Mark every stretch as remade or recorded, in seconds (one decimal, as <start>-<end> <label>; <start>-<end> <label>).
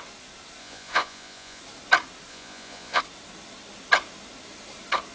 0.0-0.6 recorded; 0.6-1.6 remade; 1.6-2.3 recorded; 2.3-3.0 remade; 3.0-5.1 recorded